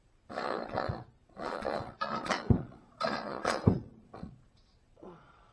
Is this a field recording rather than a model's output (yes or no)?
no